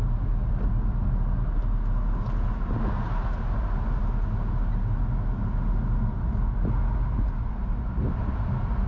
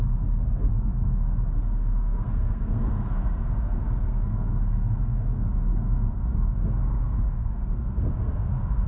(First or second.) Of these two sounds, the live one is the first